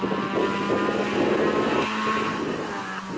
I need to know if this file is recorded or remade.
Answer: recorded